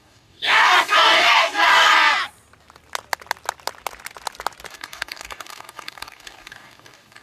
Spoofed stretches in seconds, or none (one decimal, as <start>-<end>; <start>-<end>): 0.0-1.9; 4.7-7.2